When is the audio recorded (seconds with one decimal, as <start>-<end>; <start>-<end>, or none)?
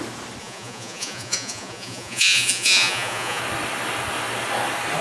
0.0-0.4; 3.4-5.0